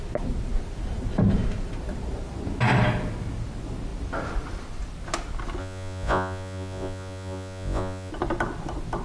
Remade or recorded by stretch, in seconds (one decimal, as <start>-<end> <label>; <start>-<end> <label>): 0.0-5.6 recorded; 5.6-8.1 remade; 8.1-9.0 recorded